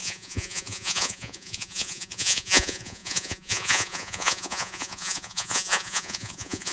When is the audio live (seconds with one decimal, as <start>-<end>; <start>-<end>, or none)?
none